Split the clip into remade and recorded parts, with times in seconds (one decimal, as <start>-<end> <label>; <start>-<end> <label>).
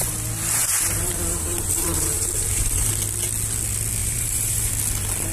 0.0-0.6 recorded; 0.6-2.9 remade; 2.9-4.0 recorded; 4.0-4.7 remade; 4.7-5.3 recorded